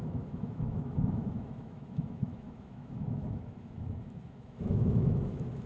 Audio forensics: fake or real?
fake